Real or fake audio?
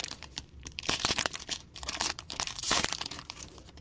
fake